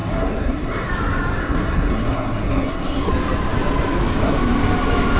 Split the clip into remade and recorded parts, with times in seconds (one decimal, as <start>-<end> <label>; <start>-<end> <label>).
0.0-0.9 remade; 0.9-1.4 recorded; 1.4-3.1 remade; 3.1-5.2 recorded